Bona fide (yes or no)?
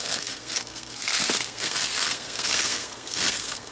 no